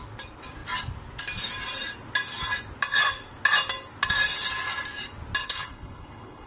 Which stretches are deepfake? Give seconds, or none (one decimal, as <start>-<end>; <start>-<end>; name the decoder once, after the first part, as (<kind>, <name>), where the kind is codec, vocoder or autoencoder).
5.4-6.5 (codec, HILCodec)